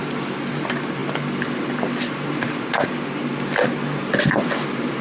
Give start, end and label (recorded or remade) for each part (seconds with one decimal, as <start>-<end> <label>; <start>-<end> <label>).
0.0-0.5 recorded; 0.5-3.3 remade; 3.3-4.0 recorded; 4.0-5.0 remade